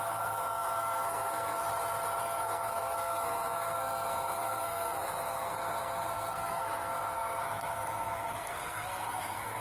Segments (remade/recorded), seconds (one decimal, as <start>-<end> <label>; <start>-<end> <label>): 0.0-1.6 remade; 1.6-2.2 recorded; 2.2-9.6 remade